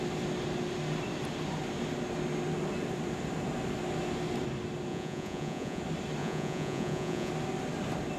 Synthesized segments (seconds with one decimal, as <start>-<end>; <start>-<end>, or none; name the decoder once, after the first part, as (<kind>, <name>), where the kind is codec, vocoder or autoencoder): 4.9-5.8 (vocoder, Vocos); 6.2-7.3